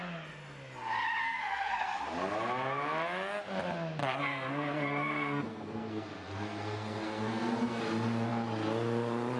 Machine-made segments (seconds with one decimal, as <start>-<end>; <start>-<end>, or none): 1.2-2.0; 4.0-7.8